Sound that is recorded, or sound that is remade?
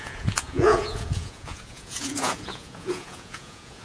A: remade